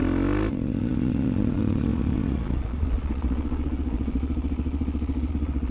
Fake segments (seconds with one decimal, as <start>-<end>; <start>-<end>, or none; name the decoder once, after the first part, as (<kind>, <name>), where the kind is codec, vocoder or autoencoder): 0.5-5.7 (vocoder, Vocos)